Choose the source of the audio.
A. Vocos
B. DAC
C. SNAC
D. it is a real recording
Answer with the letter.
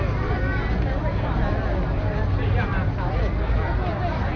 D